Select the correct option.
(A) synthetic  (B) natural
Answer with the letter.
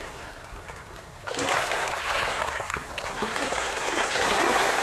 A